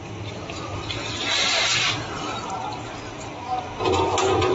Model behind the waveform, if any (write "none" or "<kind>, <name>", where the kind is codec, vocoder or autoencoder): none